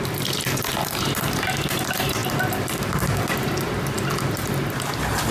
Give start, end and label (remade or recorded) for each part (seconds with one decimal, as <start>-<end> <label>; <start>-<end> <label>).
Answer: 0.0-5.3 recorded